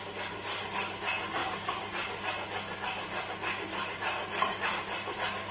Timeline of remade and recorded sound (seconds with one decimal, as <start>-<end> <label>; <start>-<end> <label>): 0.0-5.5 recorded